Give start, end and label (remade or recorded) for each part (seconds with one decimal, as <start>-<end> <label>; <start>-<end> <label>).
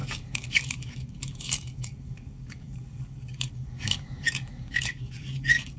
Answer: 0.0-5.8 remade